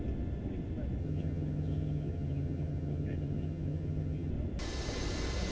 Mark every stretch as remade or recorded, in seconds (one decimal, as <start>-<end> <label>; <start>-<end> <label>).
0.0-1.0 recorded; 1.0-4.3 remade; 4.3-5.5 recorded